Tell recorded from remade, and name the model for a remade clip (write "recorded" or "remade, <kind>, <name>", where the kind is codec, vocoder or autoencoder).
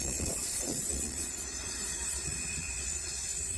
remade, vocoder, Vocos